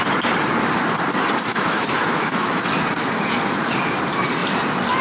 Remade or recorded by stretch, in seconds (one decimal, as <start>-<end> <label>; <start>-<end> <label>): 0.0-1.5 recorded; 1.5-2.6 remade; 2.6-5.0 recorded